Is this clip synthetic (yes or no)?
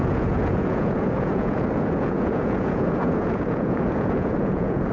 yes